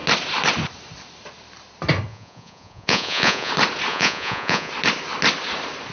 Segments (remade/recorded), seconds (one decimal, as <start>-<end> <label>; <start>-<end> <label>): 0.0-2.1 recorded; 2.1-3.5 remade; 3.5-3.9 recorded; 3.9-4.7 remade; 4.7-5.9 recorded